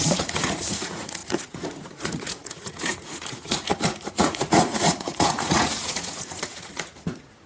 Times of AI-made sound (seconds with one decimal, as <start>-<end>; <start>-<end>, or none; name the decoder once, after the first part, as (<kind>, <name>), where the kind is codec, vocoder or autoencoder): 0.0-7.5 (vocoder, Vocos)